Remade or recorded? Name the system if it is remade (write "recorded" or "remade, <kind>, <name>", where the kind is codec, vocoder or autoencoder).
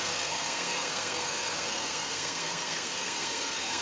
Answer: remade, codec, SNAC